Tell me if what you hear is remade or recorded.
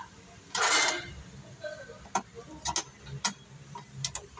recorded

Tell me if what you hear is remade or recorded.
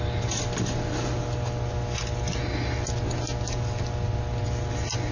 recorded